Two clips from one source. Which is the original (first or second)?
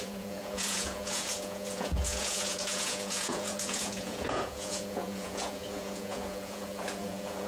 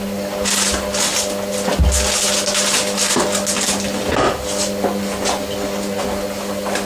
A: second